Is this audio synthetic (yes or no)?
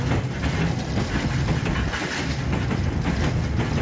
no